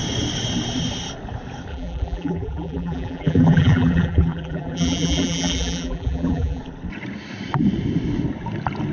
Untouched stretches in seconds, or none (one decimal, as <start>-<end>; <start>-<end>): 0.0-1.7; 6.6-8.9